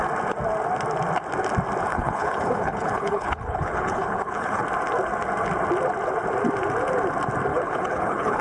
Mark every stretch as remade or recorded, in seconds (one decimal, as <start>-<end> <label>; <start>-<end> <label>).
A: 0.0-1.9 recorded; 1.9-4.6 remade; 4.6-7.5 recorded; 7.5-8.4 remade